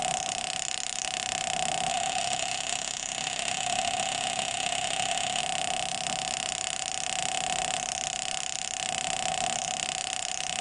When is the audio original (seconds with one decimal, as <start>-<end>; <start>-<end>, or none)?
0.0-1.9; 5.4-10.6